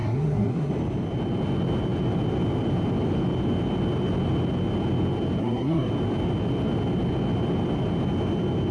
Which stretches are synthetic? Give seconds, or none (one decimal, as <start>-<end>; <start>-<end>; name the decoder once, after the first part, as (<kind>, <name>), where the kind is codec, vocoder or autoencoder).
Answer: 0.0-0.7 (codec, SNAC); 5.4-5.9